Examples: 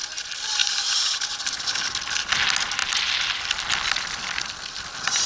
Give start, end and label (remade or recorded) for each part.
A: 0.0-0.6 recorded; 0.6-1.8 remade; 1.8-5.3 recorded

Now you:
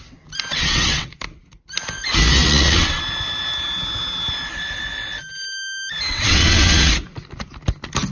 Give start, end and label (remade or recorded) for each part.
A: 0.0-0.5 recorded; 0.5-1.1 remade; 1.1-2.4 recorded; 2.4-3.0 remade; 3.0-6.1 recorded; 6.1-6.9 remade; 6.9-8.1 recorded

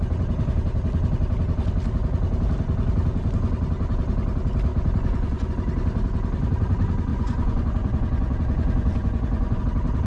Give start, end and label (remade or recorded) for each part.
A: 0.0-4.7 recorded; 4.7-5.5 remade; 5.5-7.1 recorded; 7.1-9.6 remade; 9.6-10.1 recorded

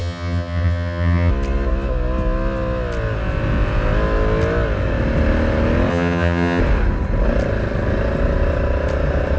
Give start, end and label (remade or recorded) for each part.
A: 0.0-1.3 remade; 1.3-5.9 recorded; 5.9-6.6 remade; 6.6-9.4 recorded

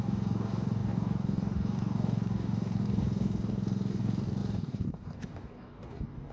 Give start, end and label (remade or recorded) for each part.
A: 0.0-6.3 remade